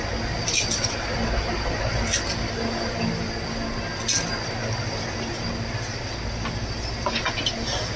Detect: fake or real real